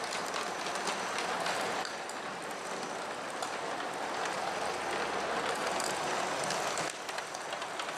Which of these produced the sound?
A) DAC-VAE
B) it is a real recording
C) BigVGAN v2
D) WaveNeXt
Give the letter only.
B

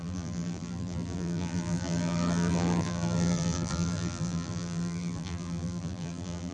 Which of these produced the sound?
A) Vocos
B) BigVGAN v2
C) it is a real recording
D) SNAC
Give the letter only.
B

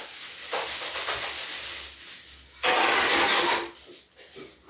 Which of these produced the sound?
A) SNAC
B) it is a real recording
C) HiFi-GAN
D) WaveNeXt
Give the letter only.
B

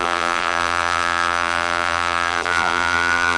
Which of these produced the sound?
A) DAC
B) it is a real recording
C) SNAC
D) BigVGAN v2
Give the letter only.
D